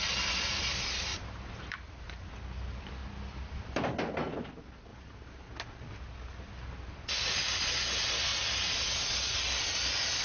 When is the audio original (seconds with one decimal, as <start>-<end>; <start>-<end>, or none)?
0.0-1.1; 2.3-4.9; 5.5-10.2